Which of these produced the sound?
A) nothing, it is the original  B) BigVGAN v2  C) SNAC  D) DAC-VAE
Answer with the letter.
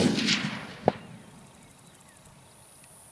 A